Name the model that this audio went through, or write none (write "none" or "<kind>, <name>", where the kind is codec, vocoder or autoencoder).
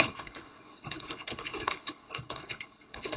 codec, HILCodec